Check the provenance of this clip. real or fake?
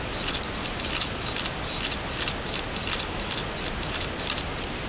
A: real